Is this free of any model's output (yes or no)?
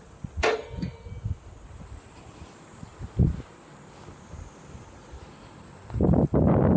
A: yes